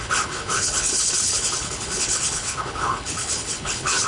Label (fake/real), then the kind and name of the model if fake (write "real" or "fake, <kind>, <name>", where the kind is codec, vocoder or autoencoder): fake, codec, HILCodec